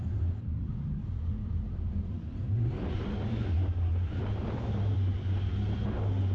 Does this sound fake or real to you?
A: real